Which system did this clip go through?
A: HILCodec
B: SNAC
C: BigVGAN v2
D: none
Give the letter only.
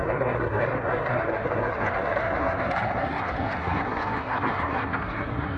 B